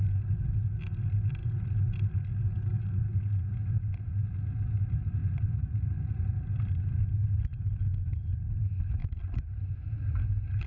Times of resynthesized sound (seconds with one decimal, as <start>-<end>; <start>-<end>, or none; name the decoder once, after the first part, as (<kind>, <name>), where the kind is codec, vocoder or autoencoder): 9.0-9.5 (vocoder, BigVGAN v2)